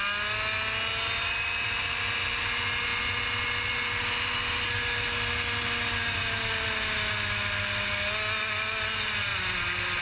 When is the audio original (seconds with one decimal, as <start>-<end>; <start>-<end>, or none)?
0.0-10.0